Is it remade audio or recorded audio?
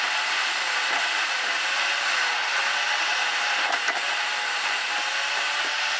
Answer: recorded